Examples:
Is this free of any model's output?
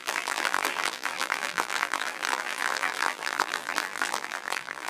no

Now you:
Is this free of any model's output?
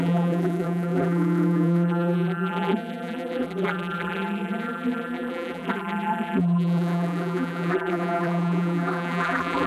no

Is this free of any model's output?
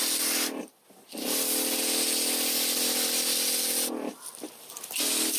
yes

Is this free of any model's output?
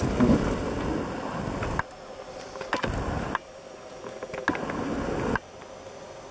yes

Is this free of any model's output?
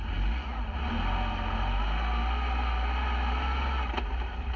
yes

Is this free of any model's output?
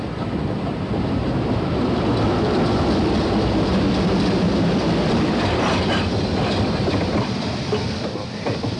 no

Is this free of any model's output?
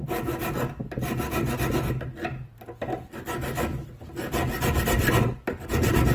yes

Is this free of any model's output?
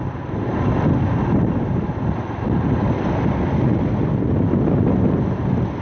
yes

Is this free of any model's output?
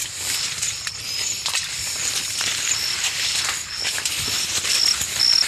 no